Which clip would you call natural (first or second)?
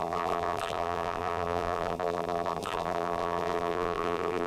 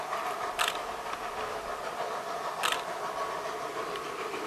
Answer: second